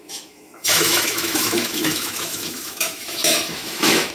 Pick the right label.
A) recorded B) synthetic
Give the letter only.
B